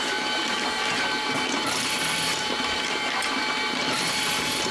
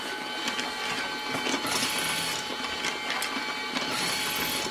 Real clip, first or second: second